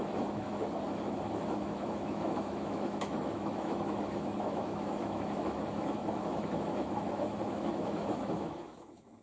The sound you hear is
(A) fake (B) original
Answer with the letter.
A